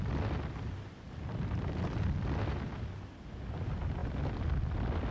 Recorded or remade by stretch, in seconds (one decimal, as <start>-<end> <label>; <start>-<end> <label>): 0.0-5.1 recorded